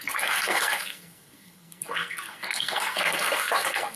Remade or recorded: remade